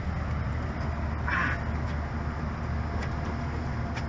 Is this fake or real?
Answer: real